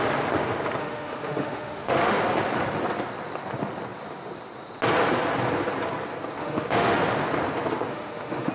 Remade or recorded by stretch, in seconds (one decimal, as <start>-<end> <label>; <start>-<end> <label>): 0.0-0.8 recorded; 0.8-2.2 remade; 2.2-6.4 recorded; 6.4-7.0 remade; 7.0-7.9 recorded; 7.9-8.5 remade